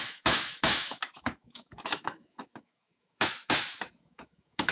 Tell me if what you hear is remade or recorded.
remade